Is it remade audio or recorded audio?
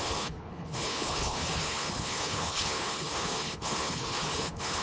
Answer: remade